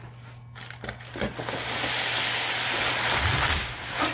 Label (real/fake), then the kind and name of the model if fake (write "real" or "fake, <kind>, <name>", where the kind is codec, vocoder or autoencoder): real